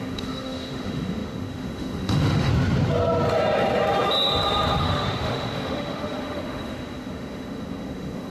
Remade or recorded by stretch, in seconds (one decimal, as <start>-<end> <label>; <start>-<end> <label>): 0.0-2.5 remade; 2.5-4.8 recorded; 4.8-8.3 remade